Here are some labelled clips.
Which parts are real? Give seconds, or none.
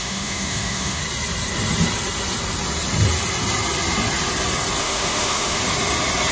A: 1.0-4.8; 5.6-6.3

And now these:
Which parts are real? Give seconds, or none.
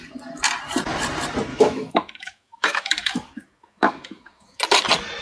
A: 0.0-1.5; 4.6-5.2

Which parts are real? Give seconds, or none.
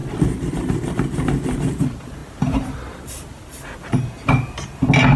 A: 0.0-5.2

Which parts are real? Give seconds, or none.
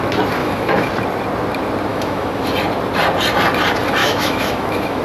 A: 0.0-0.4; 0.9-1.9; 2.5-4.0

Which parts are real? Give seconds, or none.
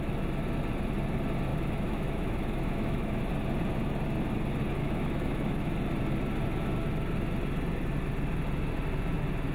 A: 0.0-1.5; 3.2-4.8; 5.7-9.5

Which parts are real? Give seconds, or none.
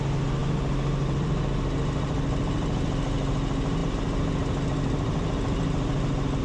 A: 0.0-6.4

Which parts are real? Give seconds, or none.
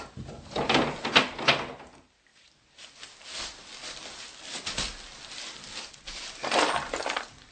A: 0.0-7.5